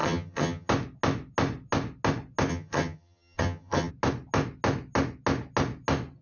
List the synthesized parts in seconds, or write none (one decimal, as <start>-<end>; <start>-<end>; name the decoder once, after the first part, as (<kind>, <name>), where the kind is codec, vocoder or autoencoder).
0.0-0.7 (vocoder, HiFi-GAN); 2.5-3.9

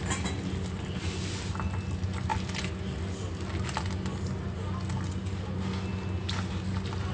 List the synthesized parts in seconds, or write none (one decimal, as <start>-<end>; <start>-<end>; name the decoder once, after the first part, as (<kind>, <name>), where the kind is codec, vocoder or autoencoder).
none

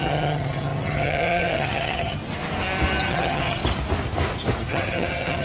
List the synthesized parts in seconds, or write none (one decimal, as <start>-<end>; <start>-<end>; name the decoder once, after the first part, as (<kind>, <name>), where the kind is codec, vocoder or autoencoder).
0.0-2.2 (vocoder, HiFi-GAN); 3.0-3.6; 4.6-5.4

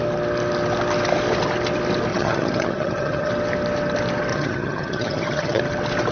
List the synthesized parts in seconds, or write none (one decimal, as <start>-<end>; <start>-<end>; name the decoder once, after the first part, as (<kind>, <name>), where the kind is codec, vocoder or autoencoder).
2.1-3.3 (vocoder, HiFi-GAN); 4.3-5.6